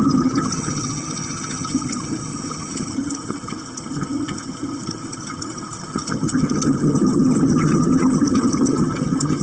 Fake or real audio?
fake